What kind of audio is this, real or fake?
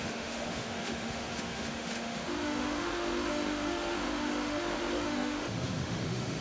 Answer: fake